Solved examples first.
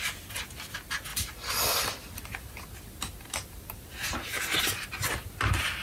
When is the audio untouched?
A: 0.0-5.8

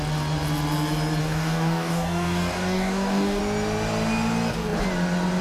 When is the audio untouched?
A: 0.0-1.2; 3.4-5.4

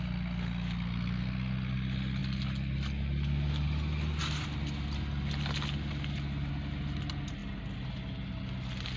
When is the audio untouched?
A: 0.0-9.0

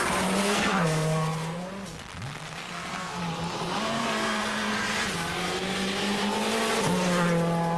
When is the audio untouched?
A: 0.0-0.4; 1.7-2.6; 3.2-4.0; 4.7-7.8